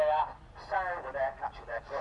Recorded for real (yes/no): yes